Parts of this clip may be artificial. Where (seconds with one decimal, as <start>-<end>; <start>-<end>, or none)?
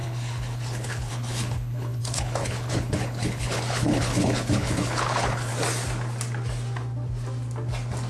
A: 0.0-5.5